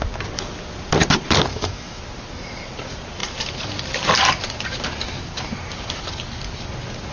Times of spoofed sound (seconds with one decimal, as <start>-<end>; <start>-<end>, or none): 1.5-2.0